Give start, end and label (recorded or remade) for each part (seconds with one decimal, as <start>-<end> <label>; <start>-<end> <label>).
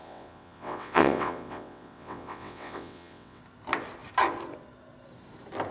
0.0-3.4 remade; 3.4-5.7 recorded